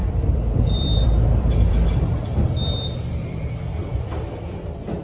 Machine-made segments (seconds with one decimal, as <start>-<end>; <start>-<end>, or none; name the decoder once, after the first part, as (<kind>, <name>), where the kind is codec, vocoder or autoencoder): 0.0-5.0 (vocoder, BigVGAN v2)